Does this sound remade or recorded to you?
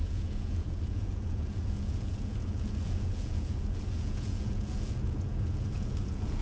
remade